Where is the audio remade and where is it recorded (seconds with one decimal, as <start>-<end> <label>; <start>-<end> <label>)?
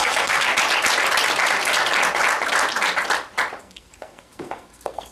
0.0-0.5 remade; 0.5-3.6 recorded; 3.6-5.1 remade